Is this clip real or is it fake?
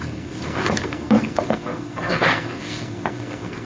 fake